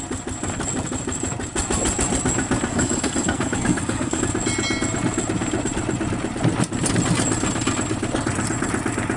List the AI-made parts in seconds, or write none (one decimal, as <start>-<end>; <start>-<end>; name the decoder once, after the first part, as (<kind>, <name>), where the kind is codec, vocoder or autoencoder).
2.7-4.2 (codec, SNAC)